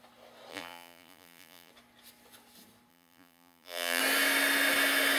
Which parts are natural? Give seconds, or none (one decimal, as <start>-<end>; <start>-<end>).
0.0-0.5; 1.7-2.9; 4.0-5.2